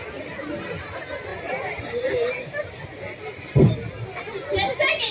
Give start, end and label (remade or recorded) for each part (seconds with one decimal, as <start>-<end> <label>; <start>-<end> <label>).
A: 0.0-5.1 recorded